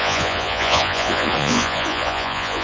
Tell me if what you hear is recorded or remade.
remade